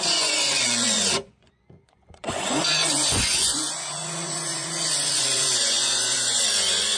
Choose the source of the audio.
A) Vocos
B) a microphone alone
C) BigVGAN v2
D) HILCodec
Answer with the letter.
A